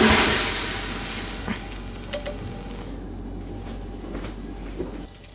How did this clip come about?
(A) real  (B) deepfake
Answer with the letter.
A